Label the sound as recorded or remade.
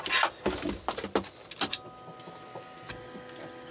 recorded